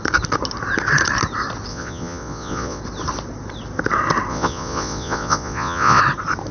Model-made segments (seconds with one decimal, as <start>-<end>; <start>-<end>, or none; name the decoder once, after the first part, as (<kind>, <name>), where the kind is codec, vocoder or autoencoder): 1.7-2.8 (vocoder, Vocos); 4.3-6.0